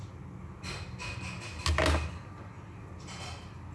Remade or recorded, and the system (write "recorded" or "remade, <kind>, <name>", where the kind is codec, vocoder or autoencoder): recorded